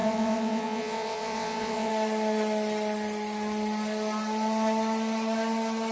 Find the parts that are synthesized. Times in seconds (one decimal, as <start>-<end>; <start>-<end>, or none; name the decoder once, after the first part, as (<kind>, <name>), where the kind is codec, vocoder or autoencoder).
0.0-1.9 (vocoder, WaveNeXt)